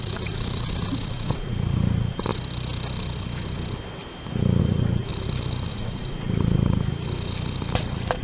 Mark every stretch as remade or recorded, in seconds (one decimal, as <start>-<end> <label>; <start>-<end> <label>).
0.0-2.3 remade; 2.3-4.6 recorded; 4.6-5.1 remade; 5.1-5.7 recorded; 5.7-6.9 remade; 6.9-8.2 recorded